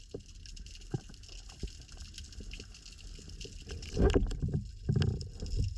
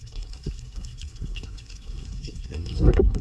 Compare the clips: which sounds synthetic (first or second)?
second